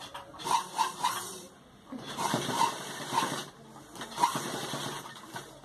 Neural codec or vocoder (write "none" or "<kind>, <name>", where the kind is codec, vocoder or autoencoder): vocoder, BigVGAN v2